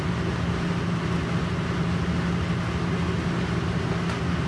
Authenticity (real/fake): real